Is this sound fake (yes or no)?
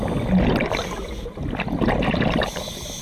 no